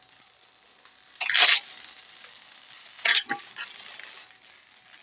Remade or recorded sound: recorded